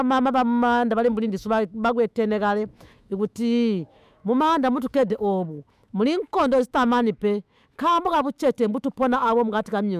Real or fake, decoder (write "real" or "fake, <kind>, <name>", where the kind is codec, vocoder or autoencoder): fake, autoencoder, DAC-VAE